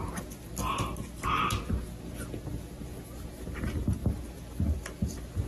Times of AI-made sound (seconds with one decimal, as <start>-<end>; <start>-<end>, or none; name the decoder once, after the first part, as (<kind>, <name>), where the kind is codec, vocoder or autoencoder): none